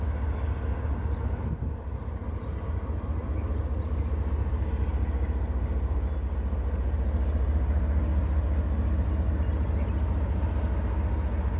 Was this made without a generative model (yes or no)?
yes